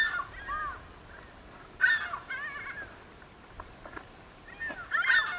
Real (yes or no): yes